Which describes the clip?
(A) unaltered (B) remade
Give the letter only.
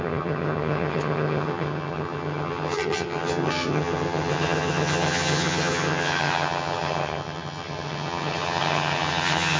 B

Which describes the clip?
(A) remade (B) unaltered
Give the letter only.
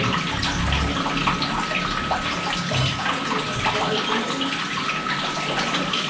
B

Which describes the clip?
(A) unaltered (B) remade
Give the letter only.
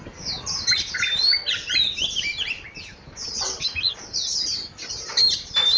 A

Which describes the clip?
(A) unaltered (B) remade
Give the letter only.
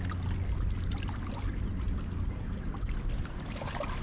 A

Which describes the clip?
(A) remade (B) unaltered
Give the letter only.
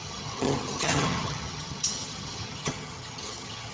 A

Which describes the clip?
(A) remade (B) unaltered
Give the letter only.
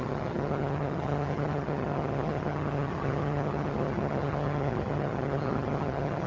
A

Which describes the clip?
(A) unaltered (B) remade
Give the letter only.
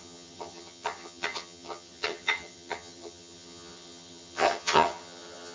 B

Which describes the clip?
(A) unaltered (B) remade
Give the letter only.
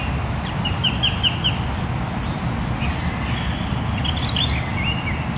A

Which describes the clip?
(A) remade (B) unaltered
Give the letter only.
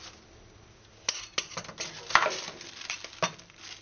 B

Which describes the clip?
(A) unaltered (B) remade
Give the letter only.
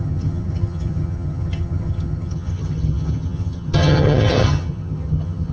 B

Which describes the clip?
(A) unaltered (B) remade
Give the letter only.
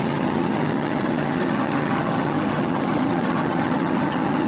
B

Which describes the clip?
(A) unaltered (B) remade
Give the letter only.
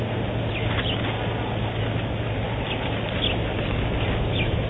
A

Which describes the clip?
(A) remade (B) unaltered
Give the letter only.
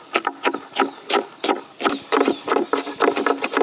B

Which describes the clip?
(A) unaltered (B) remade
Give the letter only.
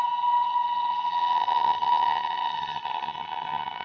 B